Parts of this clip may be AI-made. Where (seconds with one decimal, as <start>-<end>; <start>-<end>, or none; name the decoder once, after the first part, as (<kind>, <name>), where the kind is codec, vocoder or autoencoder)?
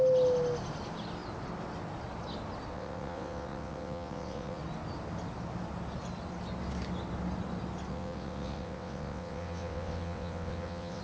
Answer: 2.7-4.6 (vocoder, WaveNeXt); 7.9-11.0